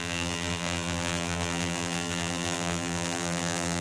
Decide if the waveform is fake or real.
fake